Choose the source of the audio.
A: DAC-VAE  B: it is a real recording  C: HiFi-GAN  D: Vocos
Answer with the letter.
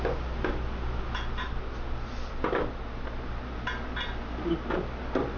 B